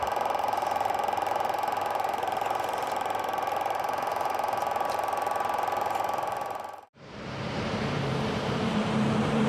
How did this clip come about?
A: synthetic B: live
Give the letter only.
A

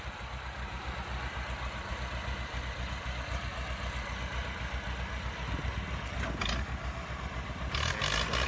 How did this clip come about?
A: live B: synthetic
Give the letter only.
A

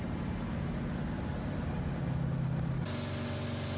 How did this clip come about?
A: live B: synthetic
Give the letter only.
A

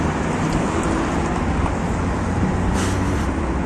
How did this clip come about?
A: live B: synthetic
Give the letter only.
A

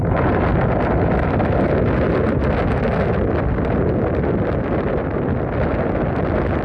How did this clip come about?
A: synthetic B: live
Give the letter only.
B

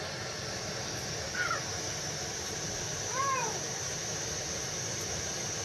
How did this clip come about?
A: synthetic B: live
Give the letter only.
A